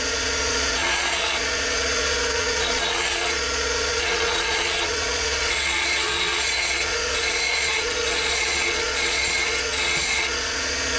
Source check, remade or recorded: remade